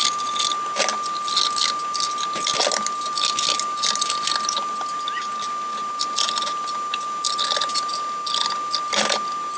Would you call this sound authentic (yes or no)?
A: yes